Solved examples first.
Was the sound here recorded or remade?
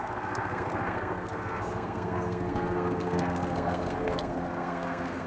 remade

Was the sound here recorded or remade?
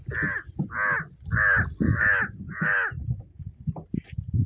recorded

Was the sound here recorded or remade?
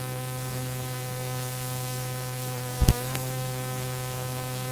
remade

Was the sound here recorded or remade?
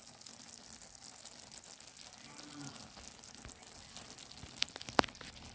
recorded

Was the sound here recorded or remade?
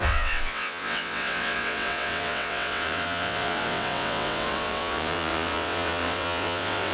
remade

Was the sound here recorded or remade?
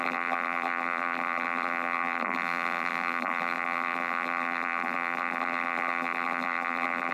remade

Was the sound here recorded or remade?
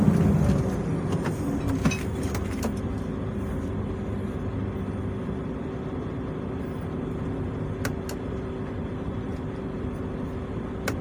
recorded